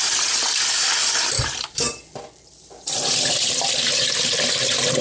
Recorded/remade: recorded